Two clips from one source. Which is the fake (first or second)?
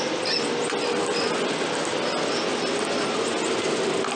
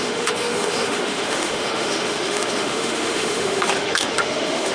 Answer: second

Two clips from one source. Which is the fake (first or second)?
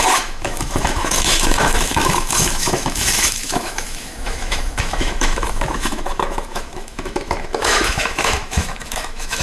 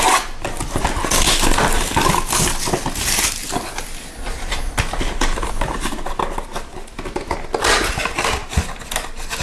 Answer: first